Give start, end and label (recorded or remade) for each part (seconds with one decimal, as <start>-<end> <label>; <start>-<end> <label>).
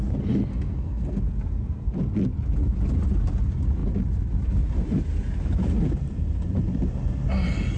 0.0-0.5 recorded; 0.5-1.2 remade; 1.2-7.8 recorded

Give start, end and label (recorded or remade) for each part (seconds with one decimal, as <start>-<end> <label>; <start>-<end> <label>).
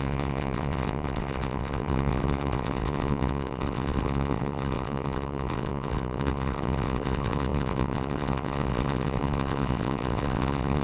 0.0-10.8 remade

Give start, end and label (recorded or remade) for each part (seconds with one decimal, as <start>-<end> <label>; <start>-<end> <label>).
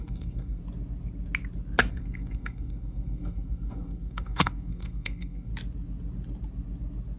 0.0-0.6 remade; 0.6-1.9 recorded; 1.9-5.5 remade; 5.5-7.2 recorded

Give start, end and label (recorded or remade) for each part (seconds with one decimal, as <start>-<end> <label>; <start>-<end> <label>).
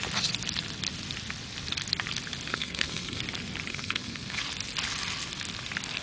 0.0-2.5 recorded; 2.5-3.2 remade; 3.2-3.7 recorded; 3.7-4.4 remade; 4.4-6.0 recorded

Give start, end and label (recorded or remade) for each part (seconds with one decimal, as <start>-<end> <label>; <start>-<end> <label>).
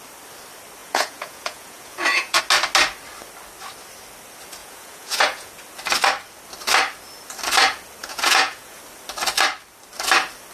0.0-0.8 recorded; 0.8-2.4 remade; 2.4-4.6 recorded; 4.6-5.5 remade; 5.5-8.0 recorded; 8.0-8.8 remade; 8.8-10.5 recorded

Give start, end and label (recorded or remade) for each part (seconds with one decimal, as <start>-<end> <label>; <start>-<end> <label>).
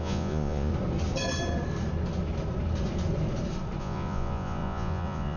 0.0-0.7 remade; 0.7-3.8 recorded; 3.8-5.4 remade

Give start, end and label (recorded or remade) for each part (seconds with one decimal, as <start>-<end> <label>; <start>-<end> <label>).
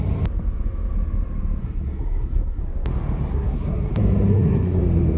0.0-1.6 recorded; 1.6-2.6 remade; 2.6-3.3 recorded; 3.3-3.9 remade; 3.9-4.3 recorded; 4.3-4.8 remade; 4.8-5.2 recorded